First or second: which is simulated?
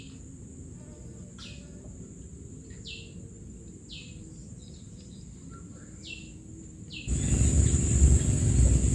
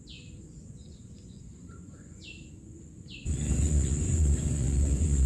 second